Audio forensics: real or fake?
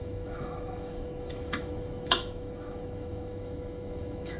fake